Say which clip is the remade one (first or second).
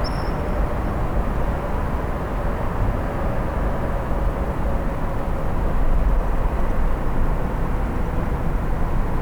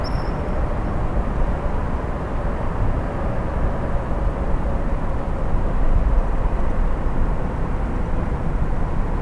second